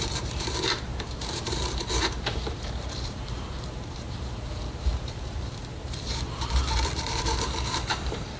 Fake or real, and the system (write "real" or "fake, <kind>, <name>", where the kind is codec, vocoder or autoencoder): fake, vocoder, BigVGAN v2